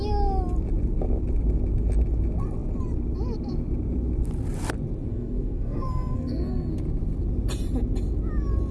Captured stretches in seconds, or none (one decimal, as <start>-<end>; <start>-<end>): 0.0-5.1; 6.7-8.7